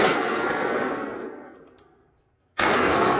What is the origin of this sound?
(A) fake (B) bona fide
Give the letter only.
A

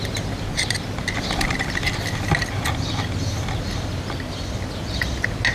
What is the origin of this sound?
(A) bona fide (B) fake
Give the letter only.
A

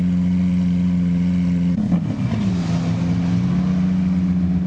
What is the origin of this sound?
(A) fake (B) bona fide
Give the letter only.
B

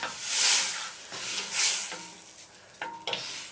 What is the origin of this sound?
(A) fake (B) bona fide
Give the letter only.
B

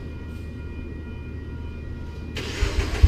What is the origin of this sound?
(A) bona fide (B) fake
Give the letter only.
A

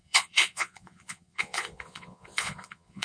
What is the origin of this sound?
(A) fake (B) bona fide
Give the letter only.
A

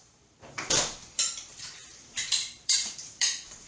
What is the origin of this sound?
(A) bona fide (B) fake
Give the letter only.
B